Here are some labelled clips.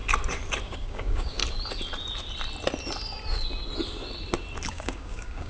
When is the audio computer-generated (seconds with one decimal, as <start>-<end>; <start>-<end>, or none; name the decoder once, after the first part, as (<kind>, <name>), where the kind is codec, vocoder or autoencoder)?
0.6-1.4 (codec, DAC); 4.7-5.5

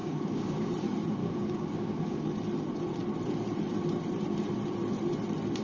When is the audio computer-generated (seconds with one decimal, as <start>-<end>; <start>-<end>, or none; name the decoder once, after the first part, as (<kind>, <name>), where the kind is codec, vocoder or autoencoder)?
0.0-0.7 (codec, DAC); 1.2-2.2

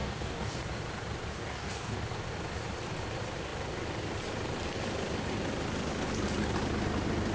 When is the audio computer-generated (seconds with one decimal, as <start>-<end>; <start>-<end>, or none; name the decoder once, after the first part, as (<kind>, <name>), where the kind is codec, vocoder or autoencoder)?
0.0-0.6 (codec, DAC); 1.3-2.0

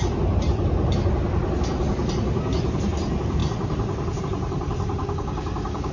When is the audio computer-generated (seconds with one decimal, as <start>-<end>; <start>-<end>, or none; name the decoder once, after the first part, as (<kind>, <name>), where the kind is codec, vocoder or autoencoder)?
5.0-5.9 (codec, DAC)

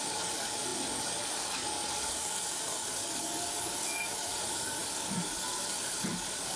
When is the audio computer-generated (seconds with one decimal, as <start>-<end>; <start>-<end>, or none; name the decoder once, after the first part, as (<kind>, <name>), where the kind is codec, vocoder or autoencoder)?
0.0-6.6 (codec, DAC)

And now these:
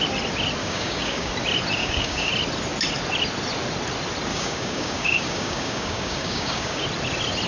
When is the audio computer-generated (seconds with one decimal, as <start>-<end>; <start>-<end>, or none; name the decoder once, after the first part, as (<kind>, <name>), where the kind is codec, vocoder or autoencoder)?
0.6-1.3 (codec, DAC); 1.8-2.3; 4.3-6.8